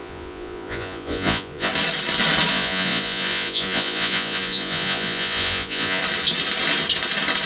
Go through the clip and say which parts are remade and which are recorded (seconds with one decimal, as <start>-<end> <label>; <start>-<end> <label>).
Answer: 0.0-1.7 remade; 1.7-2.5 recorded; 2.5-6.0 remade; 6.0-7.5 recorded